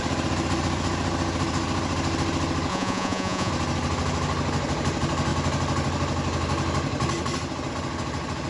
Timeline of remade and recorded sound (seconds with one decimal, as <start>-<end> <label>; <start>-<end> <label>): 0.0-2.7 recorded; 2.7-3.5 remade; 3.5-8.5 recorded